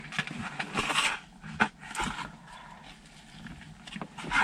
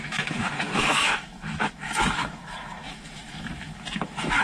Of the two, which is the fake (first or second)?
second